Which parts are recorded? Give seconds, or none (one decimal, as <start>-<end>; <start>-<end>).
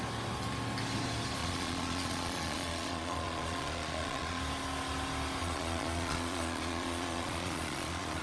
0.0-1.4; 4.4-5.4